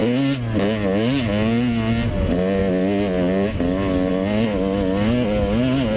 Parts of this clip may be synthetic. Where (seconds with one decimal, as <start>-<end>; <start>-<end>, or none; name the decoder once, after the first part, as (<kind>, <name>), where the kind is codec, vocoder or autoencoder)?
none